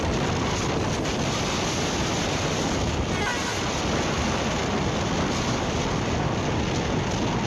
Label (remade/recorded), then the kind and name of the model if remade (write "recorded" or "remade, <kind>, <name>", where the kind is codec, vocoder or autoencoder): recorded